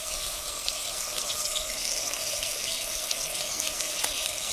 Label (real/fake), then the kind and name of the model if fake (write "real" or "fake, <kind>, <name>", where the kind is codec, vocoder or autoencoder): fake, codec, SNAC